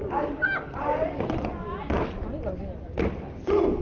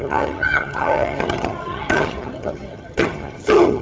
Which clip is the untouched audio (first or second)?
first